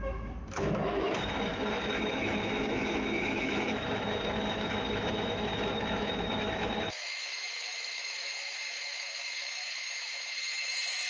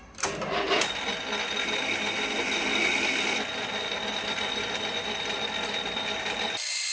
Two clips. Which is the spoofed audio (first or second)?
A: first